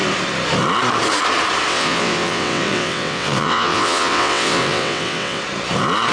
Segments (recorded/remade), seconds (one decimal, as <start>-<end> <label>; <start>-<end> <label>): 0.0-1.7 recorded; 1.7-5.4 remade; 5.4-6.1 recorded